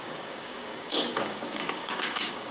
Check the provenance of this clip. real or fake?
fake